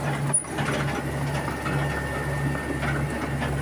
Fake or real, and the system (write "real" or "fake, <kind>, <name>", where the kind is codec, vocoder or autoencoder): real